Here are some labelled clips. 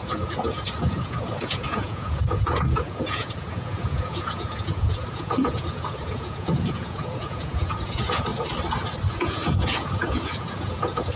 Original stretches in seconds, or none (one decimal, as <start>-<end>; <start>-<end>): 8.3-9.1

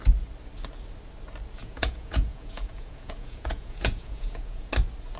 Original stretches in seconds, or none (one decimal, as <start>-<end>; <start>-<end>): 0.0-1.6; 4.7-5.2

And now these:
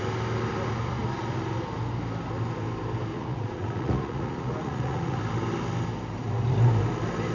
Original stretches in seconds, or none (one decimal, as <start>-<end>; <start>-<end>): 0.0-3.1; 5.2-7.3